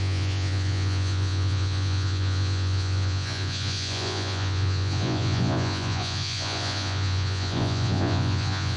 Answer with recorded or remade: remade